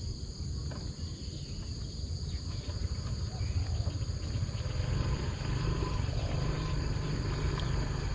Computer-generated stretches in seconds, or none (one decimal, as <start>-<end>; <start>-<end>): none